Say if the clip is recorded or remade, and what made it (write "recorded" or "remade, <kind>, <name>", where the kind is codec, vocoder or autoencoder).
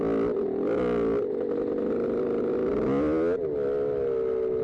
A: recorded